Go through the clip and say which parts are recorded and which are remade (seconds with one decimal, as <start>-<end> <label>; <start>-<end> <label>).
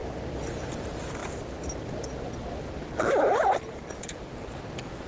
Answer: 0.0-5.1 recorded